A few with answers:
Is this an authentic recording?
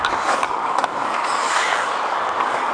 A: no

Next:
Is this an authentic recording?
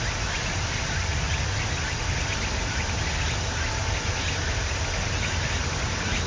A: yes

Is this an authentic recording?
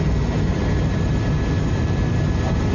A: yes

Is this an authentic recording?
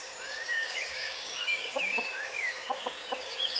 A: no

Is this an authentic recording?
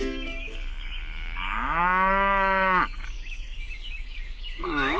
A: no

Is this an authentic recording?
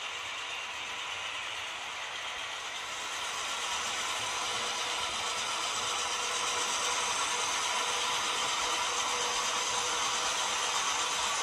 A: yes